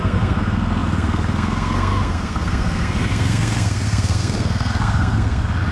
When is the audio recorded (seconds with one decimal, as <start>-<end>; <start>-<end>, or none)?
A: none